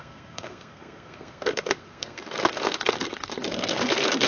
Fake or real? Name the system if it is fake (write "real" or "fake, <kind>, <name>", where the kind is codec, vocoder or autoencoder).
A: fake, codec, SNAC